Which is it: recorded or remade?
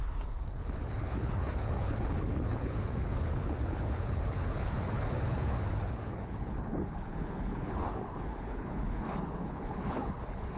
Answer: remade